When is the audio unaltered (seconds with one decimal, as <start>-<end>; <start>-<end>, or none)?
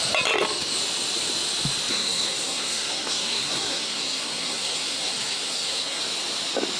0.0-1.9; 6.0-6.8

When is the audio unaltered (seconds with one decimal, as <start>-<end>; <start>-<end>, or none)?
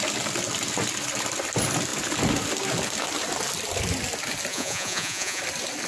0.0-4.5; 5.4-5.9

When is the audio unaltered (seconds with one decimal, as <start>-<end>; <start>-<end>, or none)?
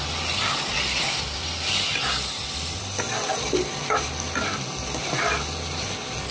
0.0-0.7; 2.8-6.3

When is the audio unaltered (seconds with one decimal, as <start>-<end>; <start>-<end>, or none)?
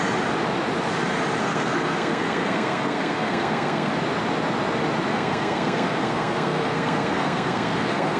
0.0-1.4; 3.9-5.1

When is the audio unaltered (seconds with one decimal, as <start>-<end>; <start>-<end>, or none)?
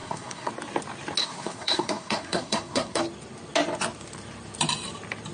0.5-1.2; 3.0-5.3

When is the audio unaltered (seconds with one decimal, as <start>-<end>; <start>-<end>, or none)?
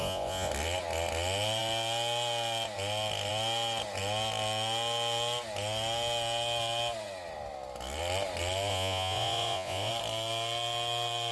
0.5-8.7; 9.9-11.3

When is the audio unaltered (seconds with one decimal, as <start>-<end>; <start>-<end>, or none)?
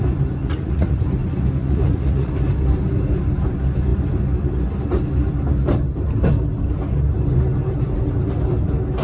0.0-0.4; 1.0-1.6; 2.3-9.0